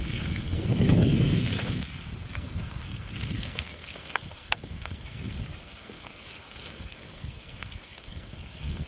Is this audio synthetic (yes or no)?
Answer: yes